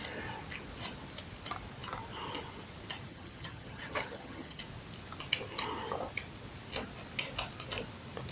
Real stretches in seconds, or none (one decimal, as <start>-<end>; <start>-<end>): 0.0-3.1; 4.6-8.3